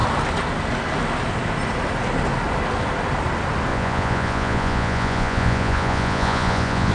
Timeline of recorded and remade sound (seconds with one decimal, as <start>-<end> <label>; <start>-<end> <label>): 0.0-3.7 recorded; 3.7-6.9 remade